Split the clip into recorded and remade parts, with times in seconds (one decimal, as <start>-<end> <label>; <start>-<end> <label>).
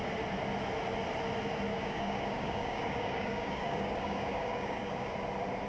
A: 0.0-1.7 recorded; 1.7-5.1 remade; 5.1-5.7 recorded